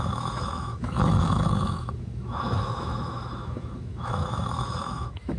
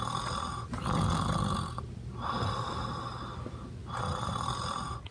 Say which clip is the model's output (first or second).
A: first